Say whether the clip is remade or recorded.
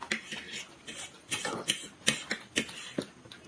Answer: recorded